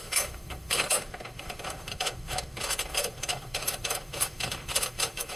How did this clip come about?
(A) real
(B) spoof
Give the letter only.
B